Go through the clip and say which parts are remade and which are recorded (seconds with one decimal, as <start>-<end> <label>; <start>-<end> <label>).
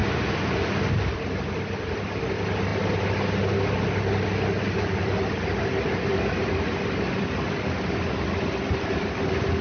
0.0-9.6 recorded